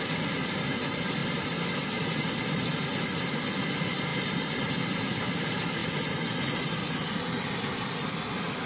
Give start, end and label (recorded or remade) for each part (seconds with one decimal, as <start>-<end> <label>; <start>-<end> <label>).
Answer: 0.0-1.2 recorded; 1.2-2.3 remade; 2.3-4.1 recorded; 4.1-4.8 remade; 4.8-8.7 recorded